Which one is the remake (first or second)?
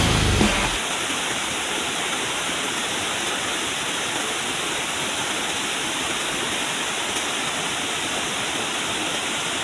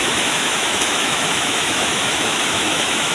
second